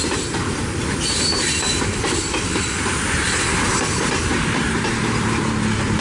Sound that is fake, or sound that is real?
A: fake